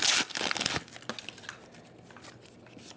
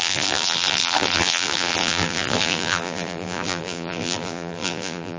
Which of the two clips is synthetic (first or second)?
second